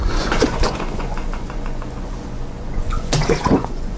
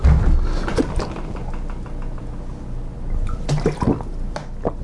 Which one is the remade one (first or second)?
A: first